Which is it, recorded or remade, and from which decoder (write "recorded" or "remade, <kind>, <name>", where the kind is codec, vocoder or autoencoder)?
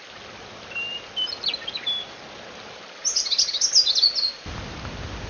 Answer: recorded